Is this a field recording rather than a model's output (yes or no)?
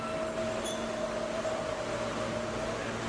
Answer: yes